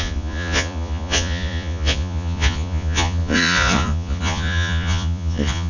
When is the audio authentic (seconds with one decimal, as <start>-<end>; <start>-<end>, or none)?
none

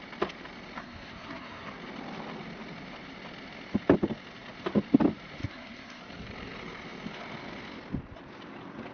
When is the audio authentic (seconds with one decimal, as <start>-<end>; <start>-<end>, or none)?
0.0-0.8; 1.7-5.4; 6.0-8.9